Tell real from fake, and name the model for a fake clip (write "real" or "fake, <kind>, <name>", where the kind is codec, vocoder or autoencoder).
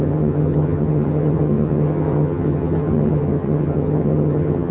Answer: fake, vocoder, HiFi-GAN